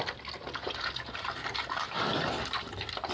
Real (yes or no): yes